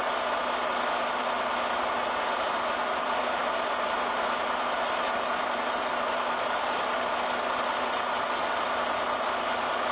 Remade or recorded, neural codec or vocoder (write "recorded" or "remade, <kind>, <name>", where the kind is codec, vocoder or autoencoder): recorded